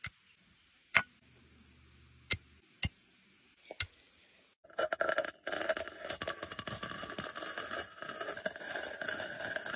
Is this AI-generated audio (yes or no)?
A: no